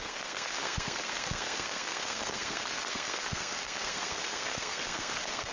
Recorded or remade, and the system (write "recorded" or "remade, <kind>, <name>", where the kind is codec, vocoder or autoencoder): remade, codec, SNAC